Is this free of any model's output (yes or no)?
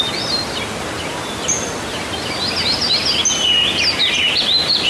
yes